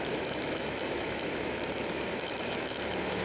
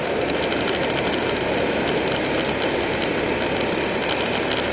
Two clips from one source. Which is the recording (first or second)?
second